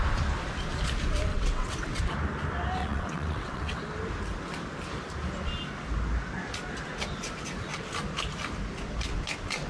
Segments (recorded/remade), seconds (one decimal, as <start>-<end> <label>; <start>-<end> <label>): 0.0-1.3 recorded; 1.3-2.0 remade; 2.0-2.8 recorded; 2.8-3.8 remade; 3.8-9.7 recorded